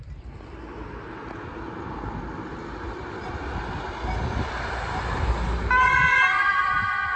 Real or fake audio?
real